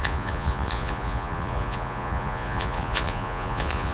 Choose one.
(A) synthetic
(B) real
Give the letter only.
A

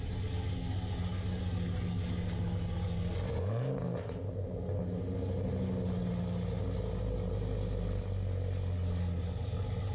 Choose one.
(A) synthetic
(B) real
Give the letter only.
B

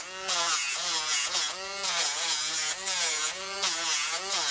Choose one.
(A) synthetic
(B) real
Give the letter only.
A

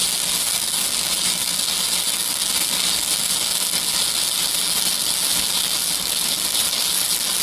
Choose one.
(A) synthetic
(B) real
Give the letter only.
B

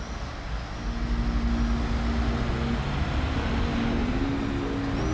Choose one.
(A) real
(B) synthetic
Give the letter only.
A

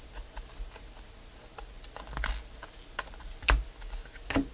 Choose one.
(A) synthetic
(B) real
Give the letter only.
B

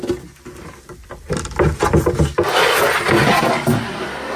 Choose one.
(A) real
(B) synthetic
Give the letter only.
A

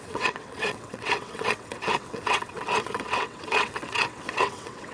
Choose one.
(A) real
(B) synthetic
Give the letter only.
B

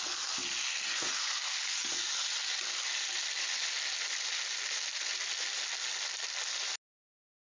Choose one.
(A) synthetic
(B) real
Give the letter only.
B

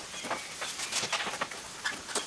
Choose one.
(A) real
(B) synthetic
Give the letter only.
A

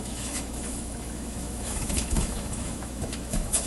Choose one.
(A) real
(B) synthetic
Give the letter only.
B